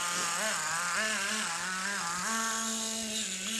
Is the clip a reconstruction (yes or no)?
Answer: no